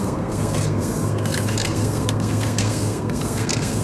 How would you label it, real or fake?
fake